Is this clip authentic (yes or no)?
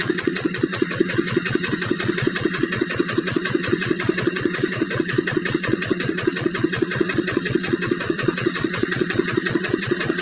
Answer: no